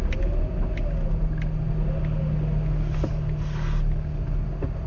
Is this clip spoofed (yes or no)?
no